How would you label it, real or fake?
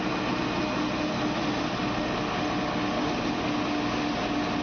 real